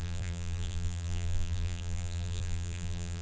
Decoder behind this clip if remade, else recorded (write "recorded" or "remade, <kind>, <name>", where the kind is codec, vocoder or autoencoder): remade, vocoder, BigVGAN v2